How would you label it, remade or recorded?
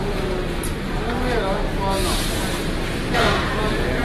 recorded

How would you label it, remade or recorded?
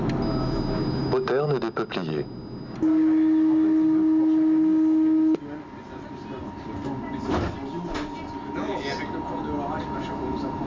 recorded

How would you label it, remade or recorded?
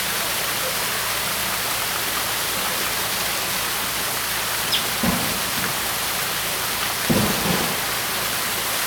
recorded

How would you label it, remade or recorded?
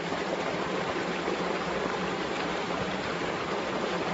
recorded